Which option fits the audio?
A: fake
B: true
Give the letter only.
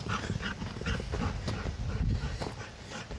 B